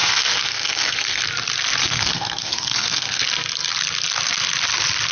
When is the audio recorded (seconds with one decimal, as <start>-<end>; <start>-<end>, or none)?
1.2-1.8; 3.2-5.1